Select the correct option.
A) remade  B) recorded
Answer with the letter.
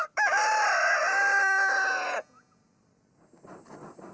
B